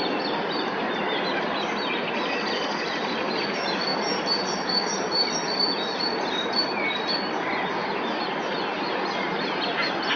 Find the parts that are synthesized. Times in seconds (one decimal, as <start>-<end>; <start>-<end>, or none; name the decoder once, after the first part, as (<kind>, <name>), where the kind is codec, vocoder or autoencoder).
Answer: none